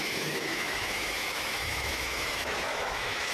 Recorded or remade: remade